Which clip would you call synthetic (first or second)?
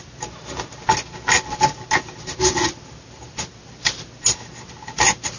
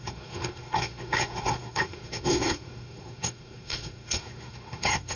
second